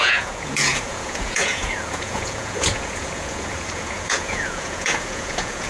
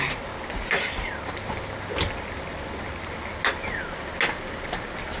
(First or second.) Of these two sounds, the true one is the second